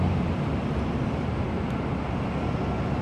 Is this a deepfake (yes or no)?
no